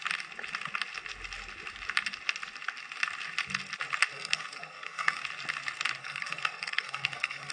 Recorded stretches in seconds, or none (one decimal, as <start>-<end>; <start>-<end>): 0.0-4.1; 5.2-6.0